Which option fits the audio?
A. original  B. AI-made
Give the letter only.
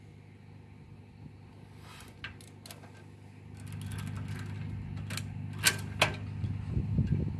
A